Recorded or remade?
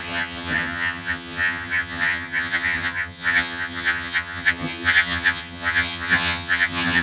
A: remade